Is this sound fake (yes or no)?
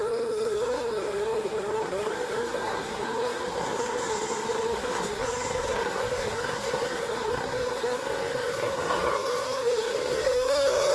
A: yes